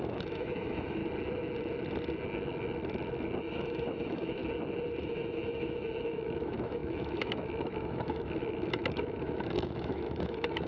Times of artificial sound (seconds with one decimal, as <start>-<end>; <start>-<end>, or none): 0.0-1.0; 3.4-4.4; 5.0-10.7